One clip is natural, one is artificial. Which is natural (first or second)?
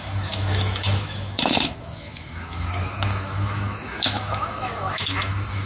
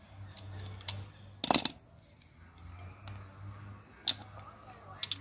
second